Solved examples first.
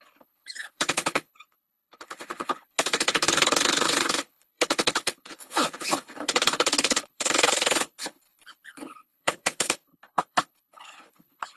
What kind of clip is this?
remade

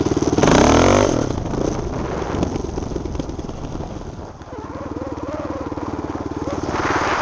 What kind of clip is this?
recorded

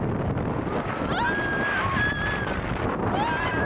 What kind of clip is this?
recorded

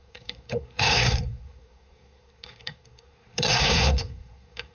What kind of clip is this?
remade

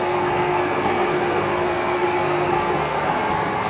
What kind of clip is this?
remade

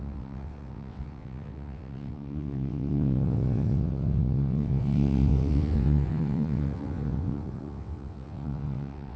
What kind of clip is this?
remade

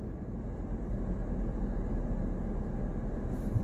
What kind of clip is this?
recorded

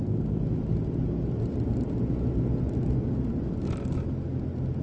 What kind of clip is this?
recorded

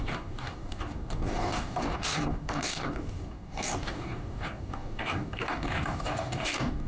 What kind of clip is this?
remade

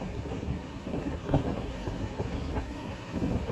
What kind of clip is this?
remade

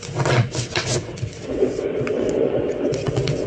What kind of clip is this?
remade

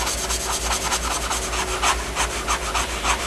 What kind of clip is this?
recorded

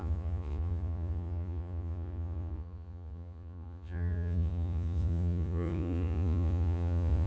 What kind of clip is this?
remade